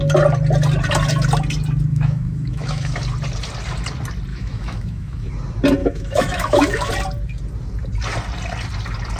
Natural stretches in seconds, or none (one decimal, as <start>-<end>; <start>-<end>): 0.0-1.9; 3.0-4.3; 5.3-5.8; 6.9-9.2